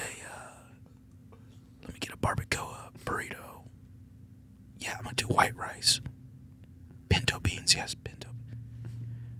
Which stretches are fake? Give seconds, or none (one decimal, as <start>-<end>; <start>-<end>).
4.9-5.6; 6.8-7.8